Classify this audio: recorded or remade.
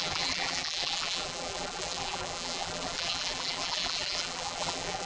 remade